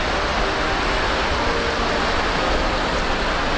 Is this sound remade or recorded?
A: recorded